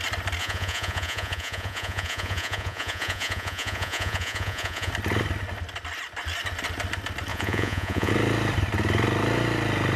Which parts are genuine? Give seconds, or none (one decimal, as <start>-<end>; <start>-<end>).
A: 0.0-0.4; 4.9-7.3; 8.1-10.0